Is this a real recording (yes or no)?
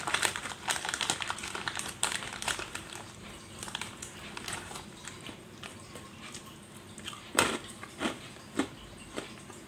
no